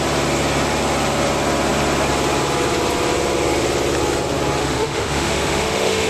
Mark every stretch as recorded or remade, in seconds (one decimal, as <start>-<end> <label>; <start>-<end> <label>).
0.0-4.6 recorded; 4.6-6.1 remade